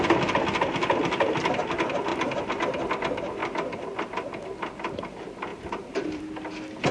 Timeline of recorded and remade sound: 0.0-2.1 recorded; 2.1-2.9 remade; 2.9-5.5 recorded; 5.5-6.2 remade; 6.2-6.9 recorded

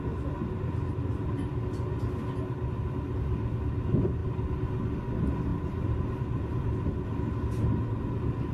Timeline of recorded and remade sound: 0.0-5.5 recorded; 5.5-6.0 remade; 6.0-8.5 recorded

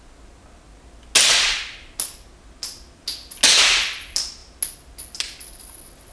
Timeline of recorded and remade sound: 0.0-6.1 recorded

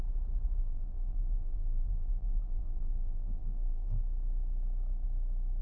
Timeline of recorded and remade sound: 0.0-0.6 recorded; 0.6-4.0 remade; 4.0-5.6 recorded

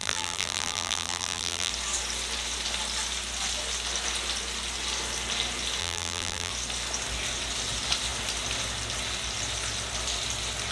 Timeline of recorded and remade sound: 0.0-1.7 remade; 1.7-5.8 recorded; 5.8-6.5 remade; 6.5-10.7 recorded